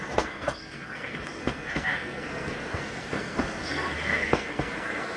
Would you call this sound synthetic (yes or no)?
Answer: yes